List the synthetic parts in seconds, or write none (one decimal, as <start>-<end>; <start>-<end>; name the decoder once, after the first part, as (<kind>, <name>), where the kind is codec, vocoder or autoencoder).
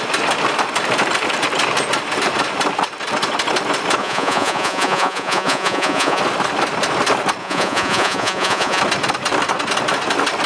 4.0-6.2 (vocoder, Vocos); 7.4-8.8